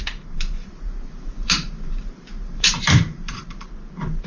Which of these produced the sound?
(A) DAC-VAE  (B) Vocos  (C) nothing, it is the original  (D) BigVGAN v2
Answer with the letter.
D